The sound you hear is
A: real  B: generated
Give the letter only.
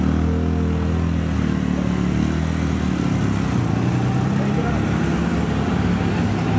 A